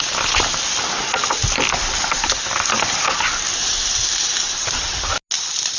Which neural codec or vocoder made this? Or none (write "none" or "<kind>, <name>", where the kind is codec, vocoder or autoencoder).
none